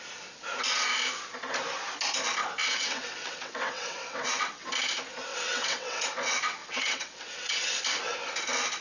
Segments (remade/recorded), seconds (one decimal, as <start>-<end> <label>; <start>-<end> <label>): 0.0-2.6 recorded; 2.6-4.7 remade; 4.7-5.3 recorded; 5.3-6.0 remade; 6.0-6.6 recorded; 6.6-7.8 remade; 7.8-8.8 recorded